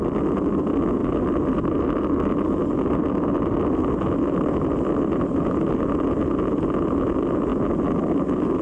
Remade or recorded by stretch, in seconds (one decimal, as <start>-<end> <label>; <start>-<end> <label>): 0.0-8.6 recorded